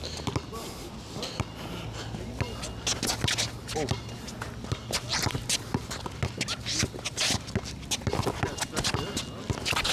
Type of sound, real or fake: real